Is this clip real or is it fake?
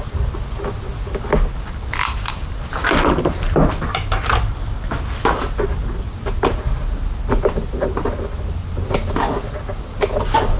real